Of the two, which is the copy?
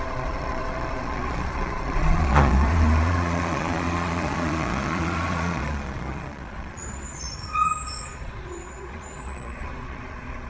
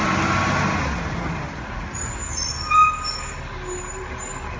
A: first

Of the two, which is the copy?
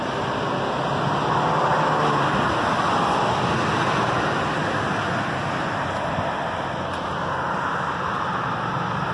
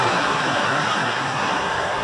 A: second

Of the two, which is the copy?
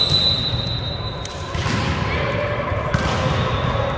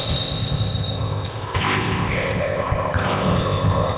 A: second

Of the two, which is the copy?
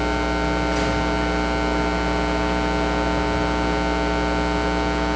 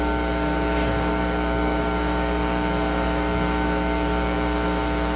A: second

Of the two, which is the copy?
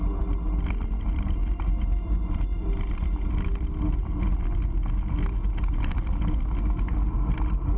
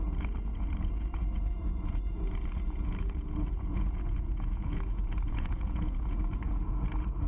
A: second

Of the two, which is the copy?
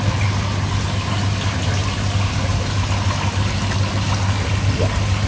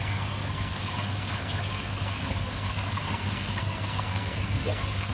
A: second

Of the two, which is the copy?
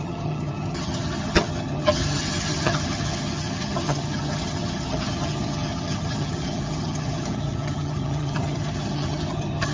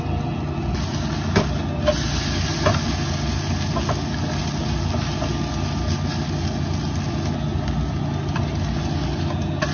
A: first